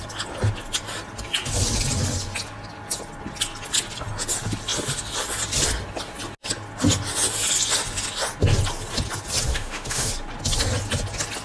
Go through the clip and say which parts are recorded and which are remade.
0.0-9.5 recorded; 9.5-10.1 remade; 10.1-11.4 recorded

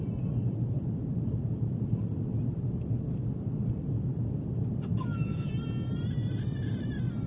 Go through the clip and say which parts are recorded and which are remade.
0.0-4.9 recorded; 4.9-5.5 remade; 5.5-7.3 recorded

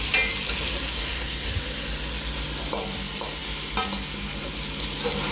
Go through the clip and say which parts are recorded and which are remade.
0.0-0.9 recorded; 0.9-1.5 remade; 1.5-5.3 recorded

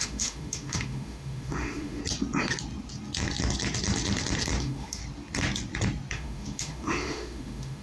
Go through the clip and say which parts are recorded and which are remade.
0.0-2.0 remade; 2.0-4.6 recorded; 4.6-5.0 remade; 5.0-6.1 recorded; 6.1-7.8 remade